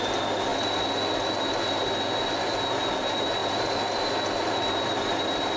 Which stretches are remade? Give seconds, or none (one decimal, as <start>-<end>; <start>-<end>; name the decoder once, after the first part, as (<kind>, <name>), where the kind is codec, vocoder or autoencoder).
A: none